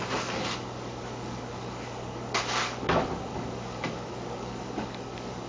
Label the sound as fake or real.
fake